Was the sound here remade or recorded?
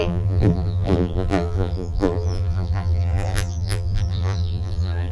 remade